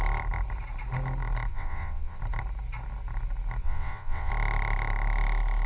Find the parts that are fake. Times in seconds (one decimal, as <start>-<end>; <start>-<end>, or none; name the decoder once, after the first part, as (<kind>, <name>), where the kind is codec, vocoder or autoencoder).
1.5-2.2 (vocoder, WaveNeXt); 3.6-4.3